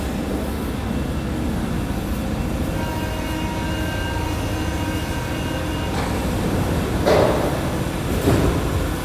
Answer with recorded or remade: recorded